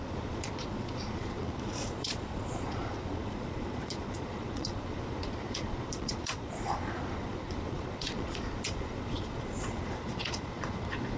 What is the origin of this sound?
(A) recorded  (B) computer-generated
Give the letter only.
B